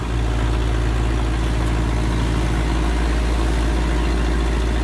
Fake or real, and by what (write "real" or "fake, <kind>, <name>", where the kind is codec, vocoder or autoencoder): real